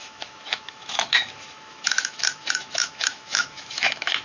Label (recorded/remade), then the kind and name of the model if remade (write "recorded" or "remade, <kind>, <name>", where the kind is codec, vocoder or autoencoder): remade, autoencoder, DAC-VAE